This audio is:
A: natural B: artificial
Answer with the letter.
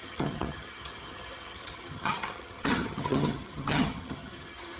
B